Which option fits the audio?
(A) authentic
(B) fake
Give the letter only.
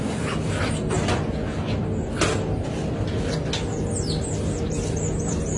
A